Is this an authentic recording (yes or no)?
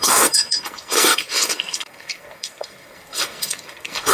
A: no